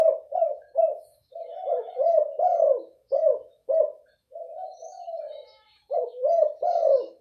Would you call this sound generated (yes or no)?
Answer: yes